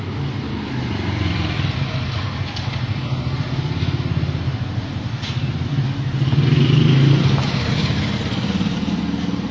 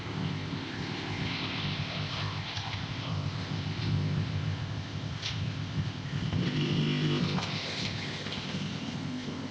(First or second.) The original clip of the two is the first